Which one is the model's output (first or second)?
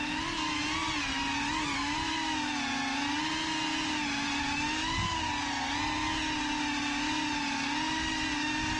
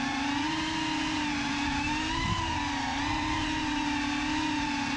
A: second